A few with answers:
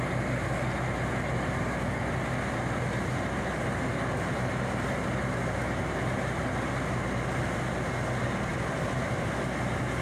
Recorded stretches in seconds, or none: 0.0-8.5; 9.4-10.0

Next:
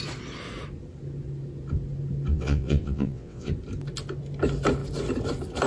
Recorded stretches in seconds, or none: 0.0-2.3; 3.5-5.7

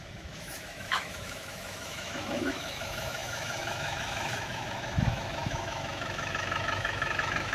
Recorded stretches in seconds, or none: none

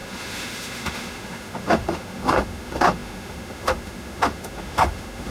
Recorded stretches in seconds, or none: none

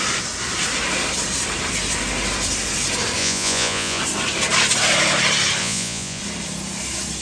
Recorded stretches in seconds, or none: 0.0-3.2; 4.0-5.6; 6.2-7.2